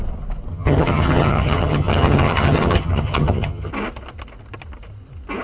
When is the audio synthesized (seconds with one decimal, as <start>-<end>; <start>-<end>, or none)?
0.5-3.7